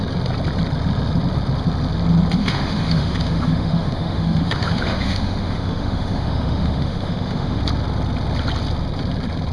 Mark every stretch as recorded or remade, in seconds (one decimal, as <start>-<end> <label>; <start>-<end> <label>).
0.0-2.4 recorded; 2.4-7.6 remade; 7.6-9.5 recorded